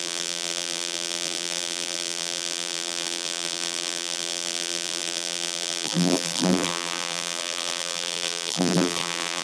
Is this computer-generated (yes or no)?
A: yes